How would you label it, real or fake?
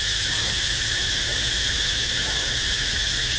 fake